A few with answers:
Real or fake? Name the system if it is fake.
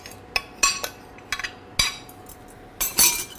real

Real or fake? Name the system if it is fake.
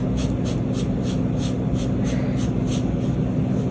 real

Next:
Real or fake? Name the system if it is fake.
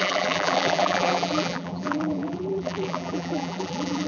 fake, vocoder, BigVGAN v2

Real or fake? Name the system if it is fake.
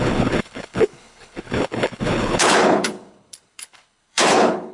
fake, codec, HILCodec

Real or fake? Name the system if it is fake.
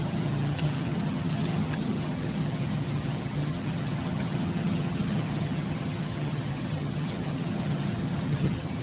fake, vocoder, HiFi-GAN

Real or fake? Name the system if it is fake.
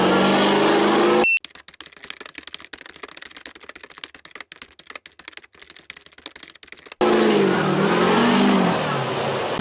real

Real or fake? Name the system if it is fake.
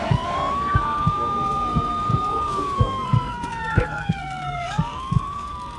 fake, codec, SNAC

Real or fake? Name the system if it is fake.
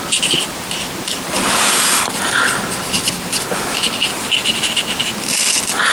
real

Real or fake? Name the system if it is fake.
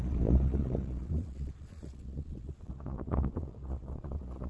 fake, vocoder, Vocos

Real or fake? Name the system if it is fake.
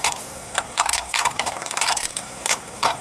fake, codec, SNAC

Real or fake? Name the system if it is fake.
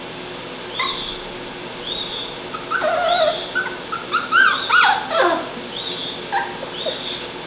real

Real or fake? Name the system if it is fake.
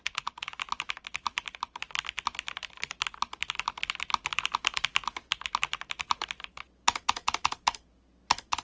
real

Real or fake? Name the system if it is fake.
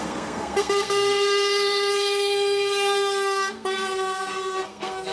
fake, codec, SNAC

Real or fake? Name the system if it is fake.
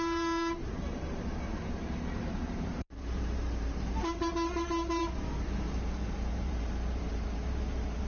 fake, vocoder, BigVGAN v2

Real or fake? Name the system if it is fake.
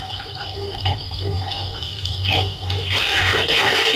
fake, codec, DAC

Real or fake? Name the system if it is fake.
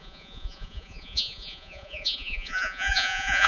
fake, vocoder, Vocos